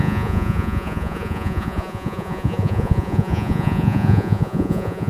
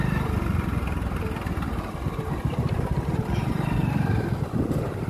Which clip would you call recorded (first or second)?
second